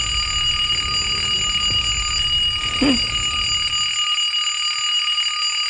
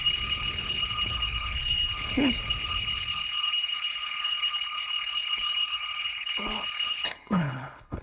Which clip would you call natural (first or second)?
first